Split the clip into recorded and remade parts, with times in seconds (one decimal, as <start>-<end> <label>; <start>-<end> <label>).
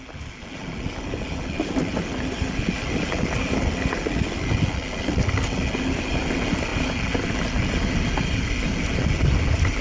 0.0-9.8 recorded